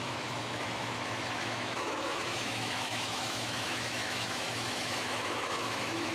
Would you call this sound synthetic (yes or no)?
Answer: yes